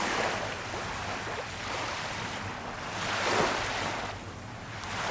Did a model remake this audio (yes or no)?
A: no